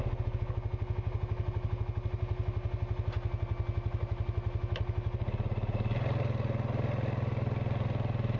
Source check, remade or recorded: recorded